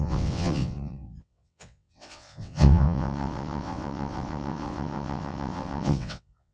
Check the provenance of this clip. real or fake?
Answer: fake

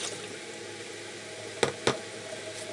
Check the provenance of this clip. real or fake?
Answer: real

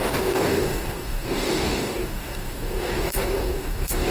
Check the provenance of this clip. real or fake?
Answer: fake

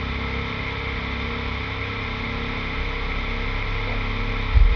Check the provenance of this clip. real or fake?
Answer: real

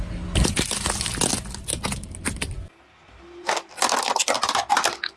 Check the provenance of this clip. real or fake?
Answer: real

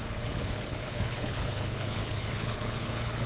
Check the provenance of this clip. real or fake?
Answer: fake